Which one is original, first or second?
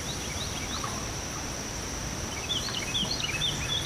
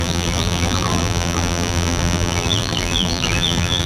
first